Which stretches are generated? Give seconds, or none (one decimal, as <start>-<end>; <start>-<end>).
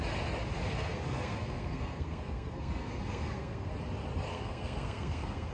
0.6-3.7; 4.3-5.5